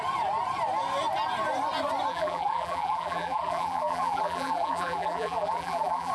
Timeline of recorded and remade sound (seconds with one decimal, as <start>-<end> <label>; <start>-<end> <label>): 0.0-2.1 recorded; 2.1-6.1 remade